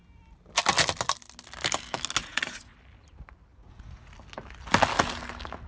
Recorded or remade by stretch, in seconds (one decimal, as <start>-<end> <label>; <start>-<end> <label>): 0.0-2.2 recorded; 2.2-2.8 remade; 2.8-3.5 recorded; 3.5-4.1 remade; 4.1-5.7 recorded